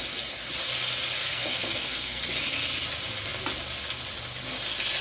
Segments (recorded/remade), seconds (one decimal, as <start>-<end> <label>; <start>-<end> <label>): 0.0-1.2 recorded; 1.2-2.2 remade; 2.2-5.0 recorded